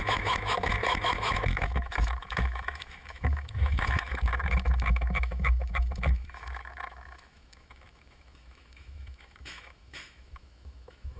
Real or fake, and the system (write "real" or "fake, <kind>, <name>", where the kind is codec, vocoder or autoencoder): fake, autoencoder, DAC-VAE